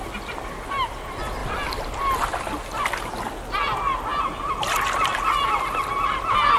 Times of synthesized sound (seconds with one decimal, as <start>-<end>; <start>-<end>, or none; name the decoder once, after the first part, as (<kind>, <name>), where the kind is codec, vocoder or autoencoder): none